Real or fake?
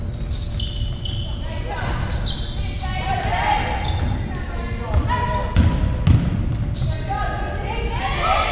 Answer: real